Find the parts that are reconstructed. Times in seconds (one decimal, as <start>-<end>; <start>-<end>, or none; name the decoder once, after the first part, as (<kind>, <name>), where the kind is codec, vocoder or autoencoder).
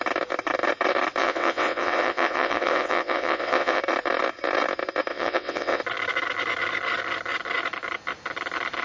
1.2-3.8 (vocoder, WaveNeXt); 5.1-5.8